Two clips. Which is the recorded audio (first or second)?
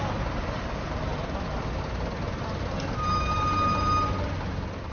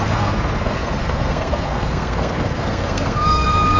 first